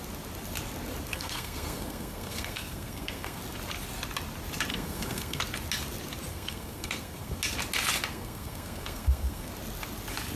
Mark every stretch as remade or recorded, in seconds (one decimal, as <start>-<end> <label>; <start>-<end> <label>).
0.0-1.1 recorded; 1.1-3.4 remade; 3.4-4.7 recorded; 4.7-5.4 remade; 5.4-6.3 recorded; 6.3-7.4 remade; 7.4-8.1 recorded; 8.1-9.5 remade; 9.5-10.4 recorded